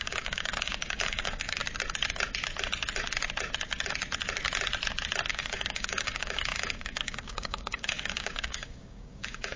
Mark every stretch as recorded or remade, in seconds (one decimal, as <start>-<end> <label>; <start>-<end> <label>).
0.0-1.6 remade; 1.6-5.3 recorded; 5.3-9.6 remade